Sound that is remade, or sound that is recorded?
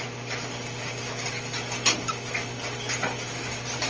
recorded